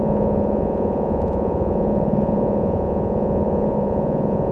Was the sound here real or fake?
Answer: fake